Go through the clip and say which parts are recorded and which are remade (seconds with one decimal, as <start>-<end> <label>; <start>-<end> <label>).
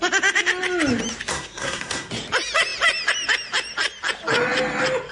0.0-1.3 recorded; 1.3-2.1 remade; 2.1-5.1 recorded